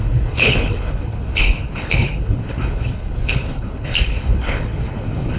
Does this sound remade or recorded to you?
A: remade